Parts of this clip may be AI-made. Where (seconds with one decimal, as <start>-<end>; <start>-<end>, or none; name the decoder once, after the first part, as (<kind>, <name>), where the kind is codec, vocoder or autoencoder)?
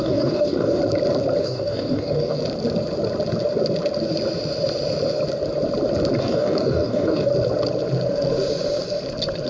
0.0-0.8 (codec, DAC); 1.4-2.4; 6.2-7.3